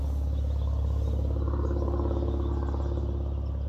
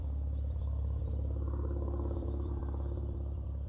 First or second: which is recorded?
first